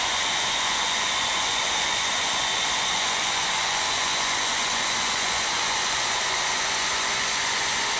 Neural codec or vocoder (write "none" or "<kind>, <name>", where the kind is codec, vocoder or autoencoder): vocoder, Vocos